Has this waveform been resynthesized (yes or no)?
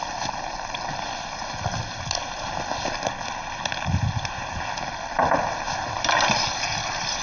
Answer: no